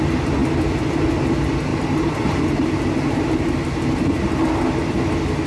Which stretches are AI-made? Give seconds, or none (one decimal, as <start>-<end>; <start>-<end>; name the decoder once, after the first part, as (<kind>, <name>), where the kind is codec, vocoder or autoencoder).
1.7-4.4 (vocoder, BigVGAN v2)